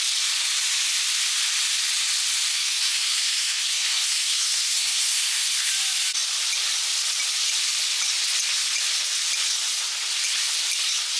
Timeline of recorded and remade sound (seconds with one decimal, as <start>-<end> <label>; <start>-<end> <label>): 0.0-2.5 recorded; 2.5-5.7 remade; 5.7-11.2 recorded